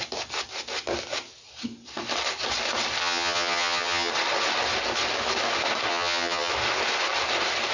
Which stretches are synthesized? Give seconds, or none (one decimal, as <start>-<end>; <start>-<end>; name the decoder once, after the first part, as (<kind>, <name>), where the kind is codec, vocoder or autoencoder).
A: 3.0-4.1 (vocoder, HiFi-GAN); 5.9-6.5